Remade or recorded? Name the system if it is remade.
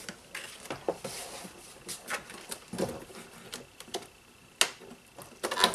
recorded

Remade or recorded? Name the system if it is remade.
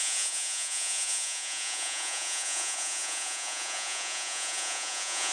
remade, vocoder, Vocos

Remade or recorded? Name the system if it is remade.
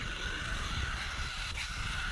remade, vocoder, BigVGAN v2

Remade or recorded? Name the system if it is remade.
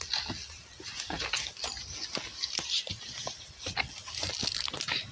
recorded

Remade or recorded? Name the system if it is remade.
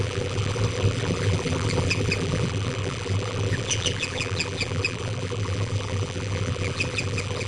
remade, vocoder, BigVGAN v2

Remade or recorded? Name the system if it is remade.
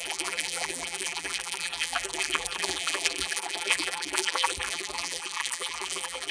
remade, vocoder, BigVGAN v2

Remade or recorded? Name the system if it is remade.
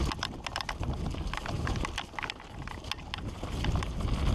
recorded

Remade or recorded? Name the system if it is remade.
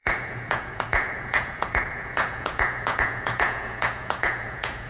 remade, vocoder, Vocos